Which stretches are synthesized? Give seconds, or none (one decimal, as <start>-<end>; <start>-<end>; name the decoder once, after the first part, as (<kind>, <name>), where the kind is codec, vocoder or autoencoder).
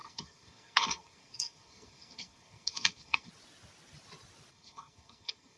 0.0-3.3 (codec, SNAC); 4.5-5.6